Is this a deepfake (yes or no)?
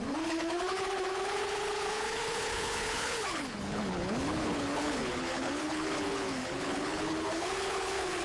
yes